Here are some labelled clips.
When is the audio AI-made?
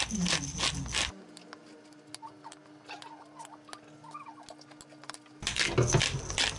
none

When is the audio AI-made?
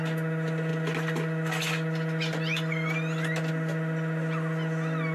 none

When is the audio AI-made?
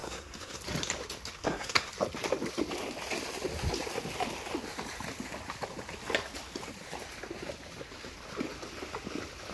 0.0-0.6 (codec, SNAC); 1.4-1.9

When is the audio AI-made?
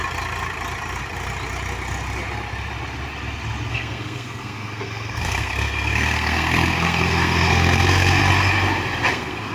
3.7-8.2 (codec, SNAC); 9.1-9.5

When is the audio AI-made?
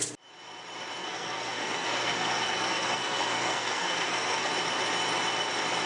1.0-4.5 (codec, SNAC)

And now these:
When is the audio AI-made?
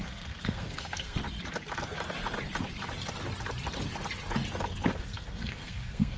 0.0-1.2 (codec, SNAC); 4.9-6.2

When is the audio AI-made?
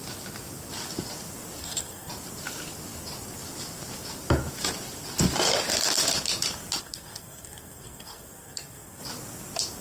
1.6-2.1 (codec, SNAC); 6.8-9.0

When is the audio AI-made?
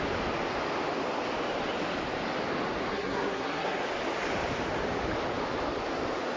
2.9-3.8 (codec, SNAC)